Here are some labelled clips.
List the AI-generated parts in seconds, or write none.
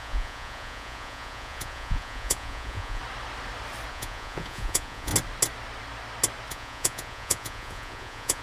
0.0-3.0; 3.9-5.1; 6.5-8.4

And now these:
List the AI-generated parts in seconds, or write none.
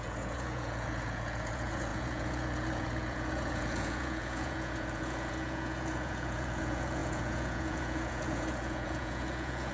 0.0-9.7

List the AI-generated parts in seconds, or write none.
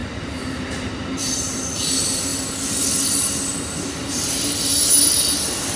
0.0-1.6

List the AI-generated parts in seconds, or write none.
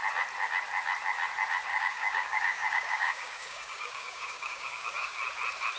1.7-5.2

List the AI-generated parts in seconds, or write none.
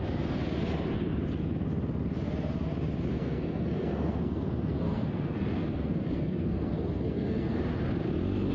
3.1-7.6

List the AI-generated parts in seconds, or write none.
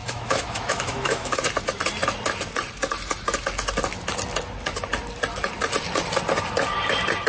0.0-1.4